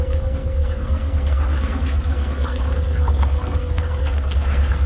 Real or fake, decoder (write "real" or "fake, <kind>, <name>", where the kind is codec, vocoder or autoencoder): fake, codec, SNAC